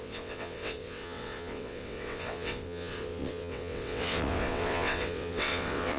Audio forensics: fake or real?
fake